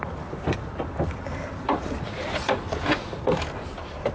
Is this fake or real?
fake